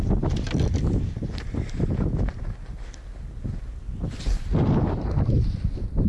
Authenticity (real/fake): real